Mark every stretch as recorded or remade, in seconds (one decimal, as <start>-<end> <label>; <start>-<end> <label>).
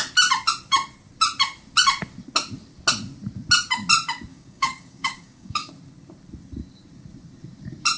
0.0-4.3 recorded; 4.3-5.7 remade; 5.7-8.0 recorded